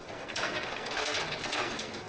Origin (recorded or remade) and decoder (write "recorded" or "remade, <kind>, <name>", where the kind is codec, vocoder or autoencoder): remade, codec, SNAC